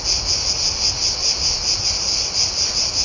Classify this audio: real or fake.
real